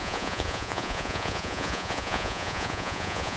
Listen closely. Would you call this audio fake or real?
fake